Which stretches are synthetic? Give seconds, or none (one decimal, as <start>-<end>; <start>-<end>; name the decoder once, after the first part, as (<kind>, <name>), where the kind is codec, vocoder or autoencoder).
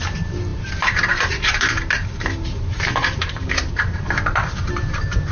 0.0-5.3 (vocoder, BigVGAN v2)